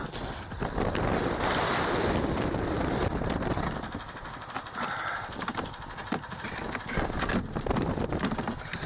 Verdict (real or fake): fake